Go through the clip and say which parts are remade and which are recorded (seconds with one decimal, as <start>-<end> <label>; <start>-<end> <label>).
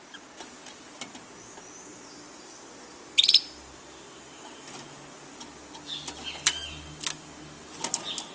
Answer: 0.0-8.3 recorded